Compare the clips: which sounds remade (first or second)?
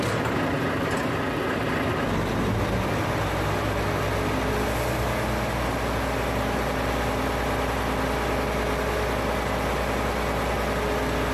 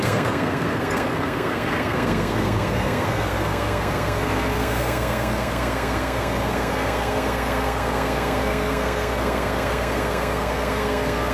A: second